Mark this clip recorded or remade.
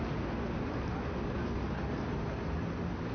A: recorded